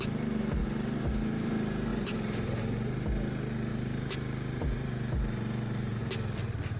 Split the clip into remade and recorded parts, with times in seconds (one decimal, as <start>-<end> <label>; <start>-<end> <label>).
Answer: 0.0-0.6 recorded; 0.6-1.5 remade; 1.5-1.9 recorded; 1.9-2.6 remade; 2.6-3.7 recorded; 3.7-6.0 remade; 6.0-6.8 recorded